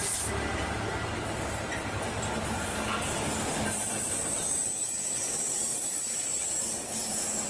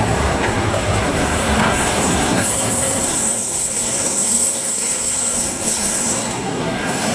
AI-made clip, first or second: second